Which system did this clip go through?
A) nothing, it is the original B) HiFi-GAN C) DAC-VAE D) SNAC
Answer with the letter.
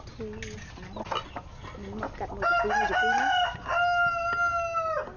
A